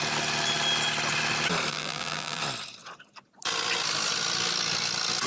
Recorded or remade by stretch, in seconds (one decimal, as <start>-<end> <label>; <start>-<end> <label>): 0.0-1.7 recorded; 1.7-2.4 remade; 2.4-5.3 recorded